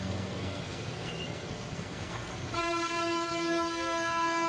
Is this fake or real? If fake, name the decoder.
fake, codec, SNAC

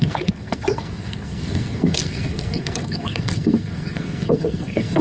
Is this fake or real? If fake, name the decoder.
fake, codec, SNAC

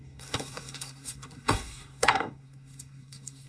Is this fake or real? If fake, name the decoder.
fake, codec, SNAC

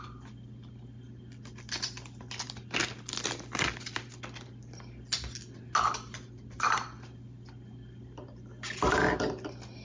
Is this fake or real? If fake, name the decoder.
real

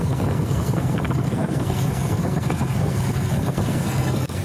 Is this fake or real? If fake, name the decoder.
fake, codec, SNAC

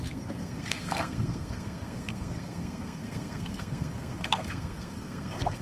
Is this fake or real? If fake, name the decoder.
fake, codec, SNAC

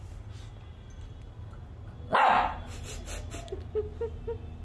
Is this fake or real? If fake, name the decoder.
real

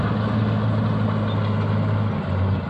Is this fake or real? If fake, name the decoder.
real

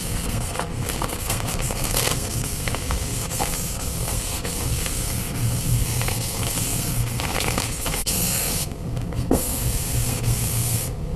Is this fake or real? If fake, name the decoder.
fake, codec, SNAC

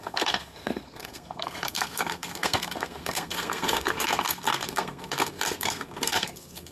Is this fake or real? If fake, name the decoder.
fake, codec, SNAC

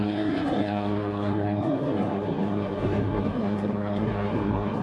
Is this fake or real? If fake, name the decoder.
fake, codec, SNAC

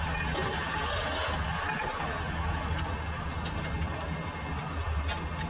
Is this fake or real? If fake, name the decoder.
real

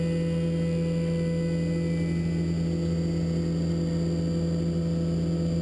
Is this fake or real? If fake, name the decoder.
real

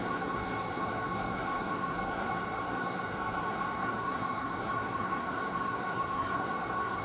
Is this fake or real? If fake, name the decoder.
fake, codec, SNAC